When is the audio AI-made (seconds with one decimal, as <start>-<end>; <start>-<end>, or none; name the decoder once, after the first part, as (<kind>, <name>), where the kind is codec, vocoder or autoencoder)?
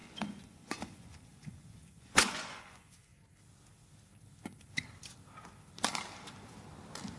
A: 0.0-3.1 (vocoder, Vocos)